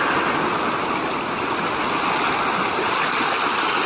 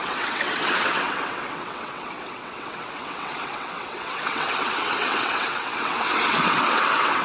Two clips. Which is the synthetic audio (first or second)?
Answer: second